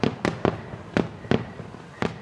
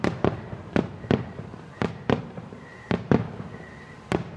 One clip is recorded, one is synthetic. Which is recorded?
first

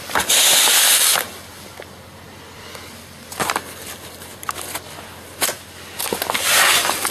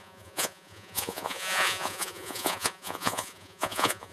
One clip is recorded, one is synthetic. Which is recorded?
first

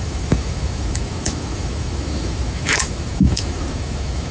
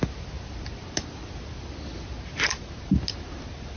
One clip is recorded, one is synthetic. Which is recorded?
second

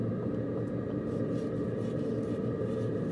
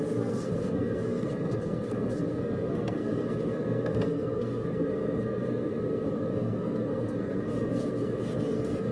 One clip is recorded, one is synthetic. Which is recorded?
first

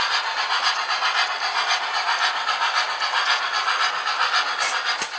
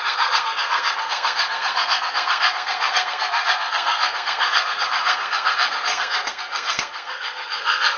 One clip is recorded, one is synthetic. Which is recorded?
first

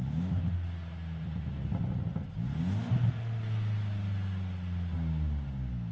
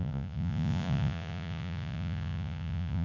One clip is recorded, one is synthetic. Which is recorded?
first